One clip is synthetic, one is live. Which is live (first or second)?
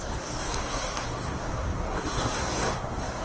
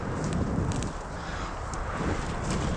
second